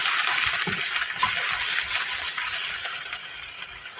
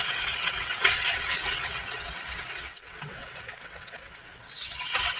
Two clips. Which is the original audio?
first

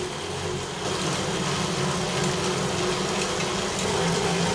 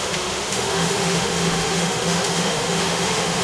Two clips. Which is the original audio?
first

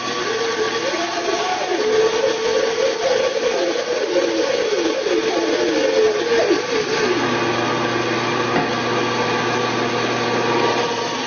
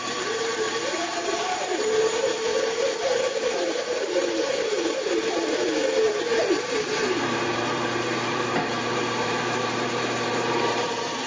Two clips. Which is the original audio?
first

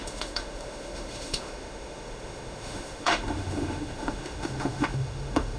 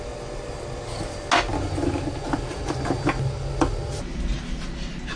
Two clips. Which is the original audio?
second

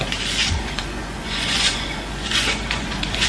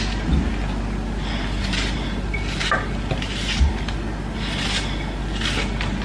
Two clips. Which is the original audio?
second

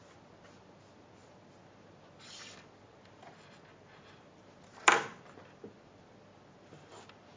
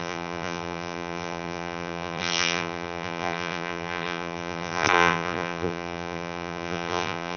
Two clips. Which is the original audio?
first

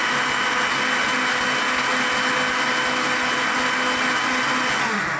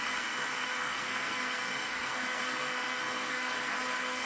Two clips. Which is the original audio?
first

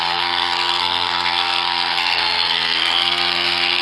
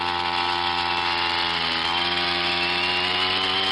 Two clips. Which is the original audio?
second